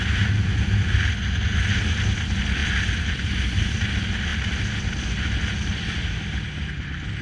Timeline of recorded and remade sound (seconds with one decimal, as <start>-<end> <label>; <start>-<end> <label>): 0.0-7.2 recorded